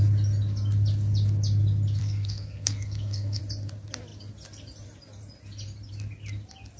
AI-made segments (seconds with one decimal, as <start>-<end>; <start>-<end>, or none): 2.0-3.4